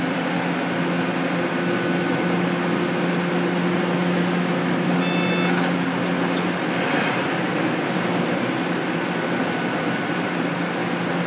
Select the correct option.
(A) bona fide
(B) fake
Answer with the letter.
A